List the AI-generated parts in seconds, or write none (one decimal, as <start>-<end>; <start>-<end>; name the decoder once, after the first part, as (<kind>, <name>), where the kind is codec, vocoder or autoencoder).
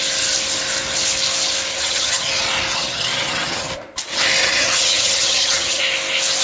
1.7-2.3 (vocoder, HiFi-GAN); 2.7-3.7; 4.4-5.8